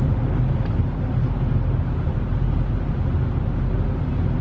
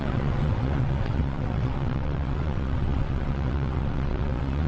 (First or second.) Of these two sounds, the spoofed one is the second